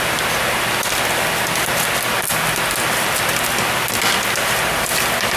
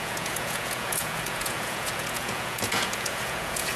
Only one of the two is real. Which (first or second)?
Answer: first